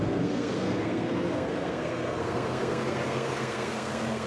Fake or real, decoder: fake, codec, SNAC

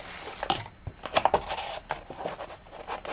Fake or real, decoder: real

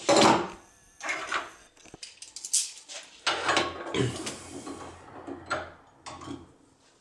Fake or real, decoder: real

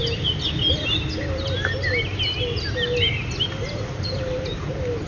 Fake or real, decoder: real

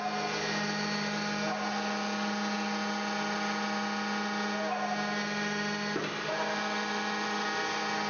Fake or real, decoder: real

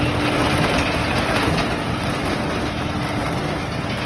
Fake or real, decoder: real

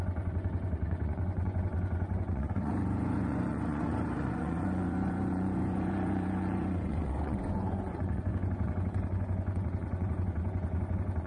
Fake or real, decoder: fake, vocoder, Vocos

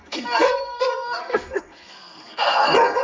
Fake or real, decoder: fake, codec, SNAC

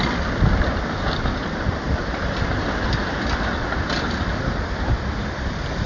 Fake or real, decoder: fake, vocoder, BigVGAN v2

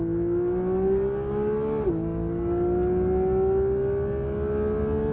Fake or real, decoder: real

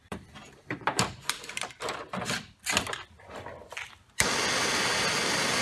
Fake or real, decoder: fake, vocoder, BigVGAN v2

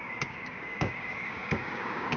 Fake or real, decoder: fake, codec, DAC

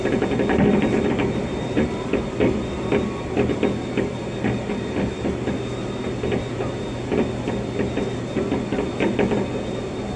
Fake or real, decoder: real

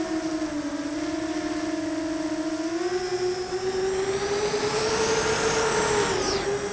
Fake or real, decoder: real